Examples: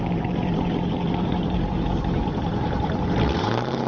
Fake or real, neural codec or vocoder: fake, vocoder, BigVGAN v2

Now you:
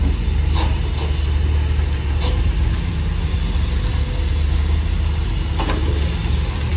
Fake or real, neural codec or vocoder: real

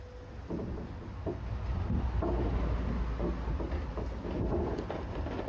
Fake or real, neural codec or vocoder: real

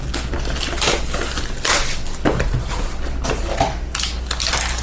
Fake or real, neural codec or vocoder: real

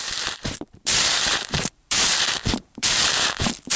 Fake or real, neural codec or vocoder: fake, vocoder, BigVGAN v2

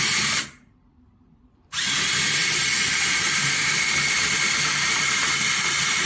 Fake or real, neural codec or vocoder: fake, vocoder, BigVGAN v2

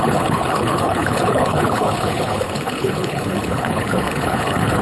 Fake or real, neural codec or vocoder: fake, codec, HILCodec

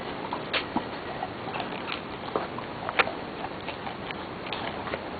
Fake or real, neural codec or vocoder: real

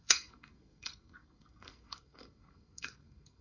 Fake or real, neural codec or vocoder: fake, codec, SNAC